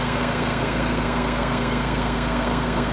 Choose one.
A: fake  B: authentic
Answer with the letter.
A